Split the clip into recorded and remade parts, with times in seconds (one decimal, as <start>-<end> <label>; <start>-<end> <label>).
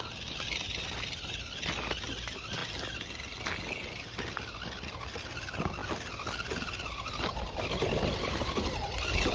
0.0-9.3 recorded